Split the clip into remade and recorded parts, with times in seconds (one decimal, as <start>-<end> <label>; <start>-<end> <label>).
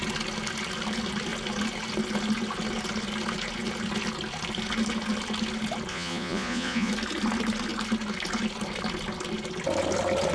0.0-5.9 recorded; 5.9-6.9 remade; 6.9-10.3 recorded